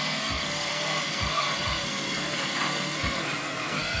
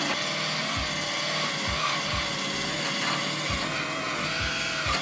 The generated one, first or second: first